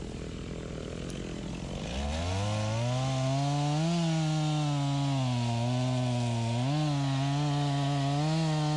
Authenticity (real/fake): real